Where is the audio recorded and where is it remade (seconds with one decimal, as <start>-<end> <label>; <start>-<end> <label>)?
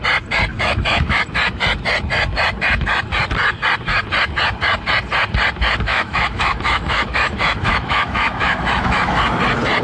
0.0-0.5 recorded; 0.5-1.2 remade; 1.2-5.9 recorded; 5.9-9.2 remade; 9.2-9.8 recorded